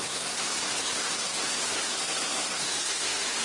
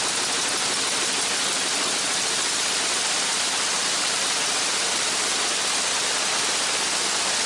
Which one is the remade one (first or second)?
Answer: first